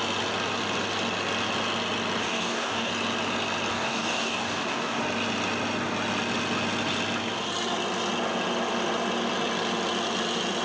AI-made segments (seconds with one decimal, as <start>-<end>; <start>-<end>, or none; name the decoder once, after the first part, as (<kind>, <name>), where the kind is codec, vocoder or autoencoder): 2.2-2.9 (codec, DAC); 3.7-5.0